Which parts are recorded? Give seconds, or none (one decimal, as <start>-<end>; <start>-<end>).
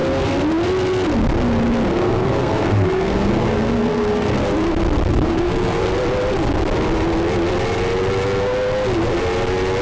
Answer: 0.0-1.9; 4.4-5.1; 5.9-9.8